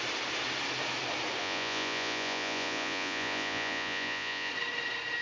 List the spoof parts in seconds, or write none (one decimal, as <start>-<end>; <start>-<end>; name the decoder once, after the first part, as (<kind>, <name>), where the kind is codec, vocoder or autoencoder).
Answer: 1.4-4.5 (vocoder, Vocos)

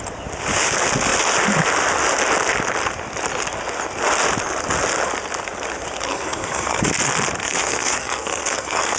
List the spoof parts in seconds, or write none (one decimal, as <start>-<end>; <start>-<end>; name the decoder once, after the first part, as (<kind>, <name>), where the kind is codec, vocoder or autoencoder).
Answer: 6.1-6.9 (codec, SNAC); 7.4-9.0

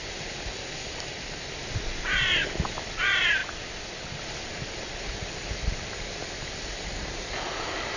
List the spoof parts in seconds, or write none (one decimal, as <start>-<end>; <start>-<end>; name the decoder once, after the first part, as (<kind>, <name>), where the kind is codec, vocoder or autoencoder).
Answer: none

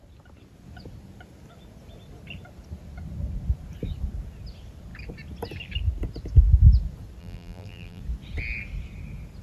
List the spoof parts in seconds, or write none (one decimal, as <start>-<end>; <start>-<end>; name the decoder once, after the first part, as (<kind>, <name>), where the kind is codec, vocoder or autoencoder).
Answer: 7.2-8.0 (vocoder, BigVGAN v2)

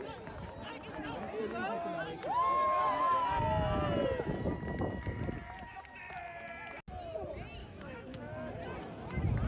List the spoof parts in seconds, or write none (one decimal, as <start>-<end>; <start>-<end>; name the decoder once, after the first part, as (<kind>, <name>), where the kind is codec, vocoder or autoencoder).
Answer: 7.6-8.5 (codec, DAC)

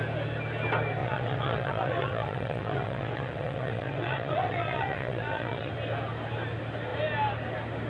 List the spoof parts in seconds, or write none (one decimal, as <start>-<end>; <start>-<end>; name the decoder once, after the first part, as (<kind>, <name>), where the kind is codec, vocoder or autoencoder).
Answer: 1.0-5.7 (vocoder, WaveNeXt)